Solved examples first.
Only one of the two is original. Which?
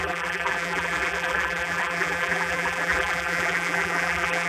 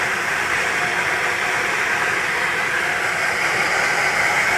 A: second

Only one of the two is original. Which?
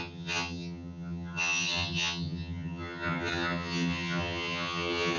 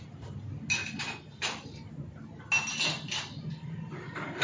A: second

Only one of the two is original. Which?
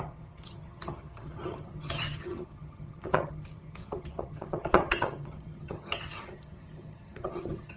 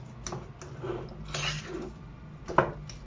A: second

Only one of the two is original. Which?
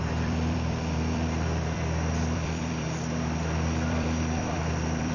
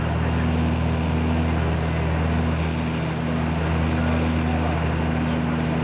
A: second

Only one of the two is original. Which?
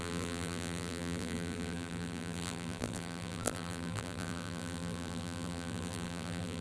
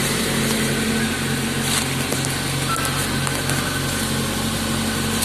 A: second